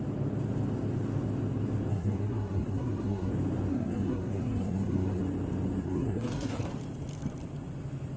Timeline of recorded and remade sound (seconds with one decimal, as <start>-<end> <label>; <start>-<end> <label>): 0.0-1.9 recorded; 1.9-3.3 remade; 3.3-3.7 recorded; 3.7-5.2 remade; 5.2-5.8 recorded; 5.8-6.6 remade; 6.6-8.2 recorded